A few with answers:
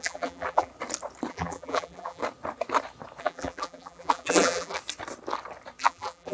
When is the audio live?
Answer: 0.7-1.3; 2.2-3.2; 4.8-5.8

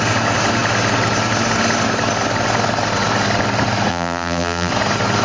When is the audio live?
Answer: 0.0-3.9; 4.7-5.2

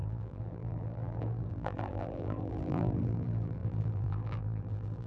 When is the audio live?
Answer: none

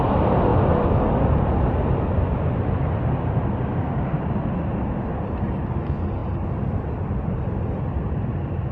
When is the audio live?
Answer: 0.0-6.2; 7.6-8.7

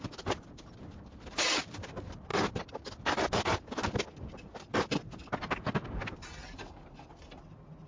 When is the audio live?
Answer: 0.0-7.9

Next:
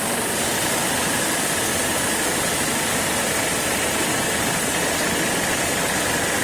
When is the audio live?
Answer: 1.7-5.5